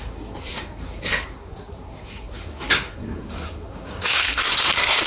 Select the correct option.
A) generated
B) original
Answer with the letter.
A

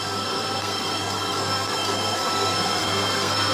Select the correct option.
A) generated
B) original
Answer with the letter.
A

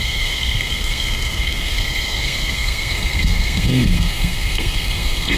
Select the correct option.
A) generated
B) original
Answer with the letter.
A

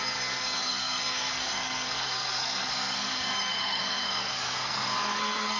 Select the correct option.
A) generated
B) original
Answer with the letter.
A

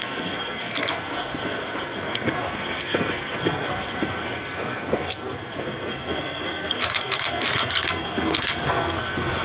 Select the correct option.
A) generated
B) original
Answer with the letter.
A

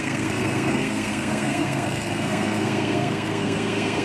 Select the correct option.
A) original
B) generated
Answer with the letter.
B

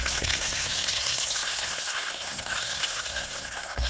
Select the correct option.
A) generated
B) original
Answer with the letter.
A